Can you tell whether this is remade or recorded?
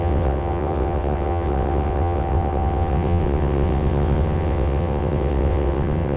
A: remade